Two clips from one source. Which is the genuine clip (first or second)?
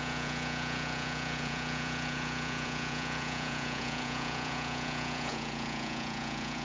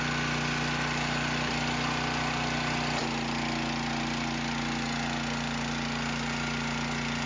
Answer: second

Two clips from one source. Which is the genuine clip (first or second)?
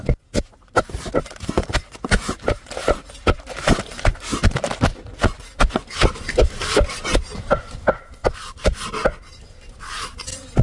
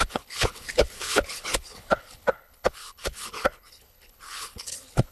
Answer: first